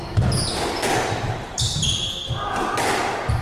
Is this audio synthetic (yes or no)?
no